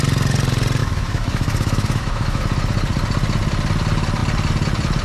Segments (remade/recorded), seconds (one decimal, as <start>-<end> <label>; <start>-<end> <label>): 0.0-0.8 recorded; 0.8-2.4 remade; 2.4-5.0 recorded